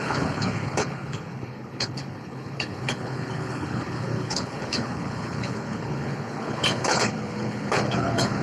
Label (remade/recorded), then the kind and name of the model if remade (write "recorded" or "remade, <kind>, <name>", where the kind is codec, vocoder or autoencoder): remade, codec, HILCodec